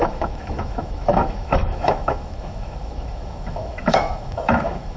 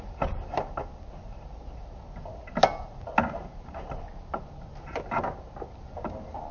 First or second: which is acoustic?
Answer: second